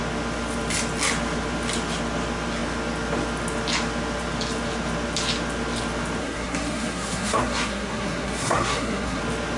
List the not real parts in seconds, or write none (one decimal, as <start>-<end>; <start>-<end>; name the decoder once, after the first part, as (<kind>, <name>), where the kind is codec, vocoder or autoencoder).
6.2-9.2 (codec, SNAC)